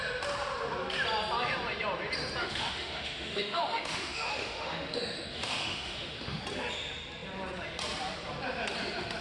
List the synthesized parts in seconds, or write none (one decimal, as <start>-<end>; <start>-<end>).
2.4-6.4